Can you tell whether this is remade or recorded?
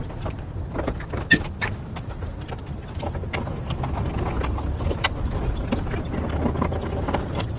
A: recorded